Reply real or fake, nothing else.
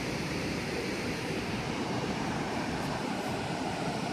fake